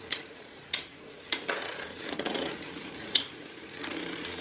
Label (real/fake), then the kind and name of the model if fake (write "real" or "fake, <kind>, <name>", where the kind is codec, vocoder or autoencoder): fake, vocoder, Vocos